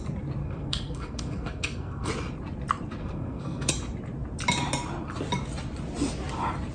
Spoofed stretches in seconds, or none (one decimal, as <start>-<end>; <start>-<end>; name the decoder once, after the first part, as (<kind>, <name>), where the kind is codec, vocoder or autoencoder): 0.4-2.1 (codec, SNAC); 3.0-3.7

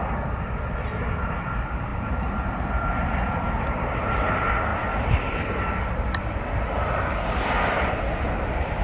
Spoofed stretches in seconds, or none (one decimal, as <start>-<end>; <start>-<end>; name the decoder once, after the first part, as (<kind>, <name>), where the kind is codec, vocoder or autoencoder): none

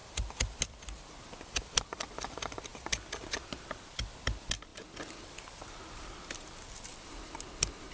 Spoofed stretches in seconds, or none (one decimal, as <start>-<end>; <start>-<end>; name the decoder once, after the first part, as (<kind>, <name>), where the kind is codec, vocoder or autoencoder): none

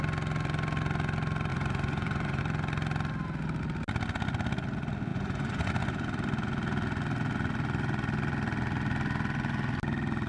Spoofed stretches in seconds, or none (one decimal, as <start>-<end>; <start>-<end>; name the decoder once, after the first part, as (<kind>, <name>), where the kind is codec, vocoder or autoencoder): 1.5-2.4 (vocoder, Vocos); 5.1-5.7